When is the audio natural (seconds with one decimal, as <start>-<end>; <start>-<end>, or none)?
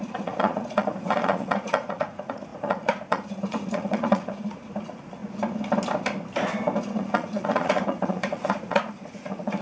5.2-6.8